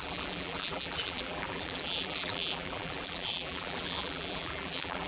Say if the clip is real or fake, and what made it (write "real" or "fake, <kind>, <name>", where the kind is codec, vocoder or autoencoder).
fake, vocoder, BigVGAN v2